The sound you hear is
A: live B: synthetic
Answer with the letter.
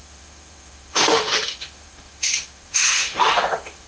B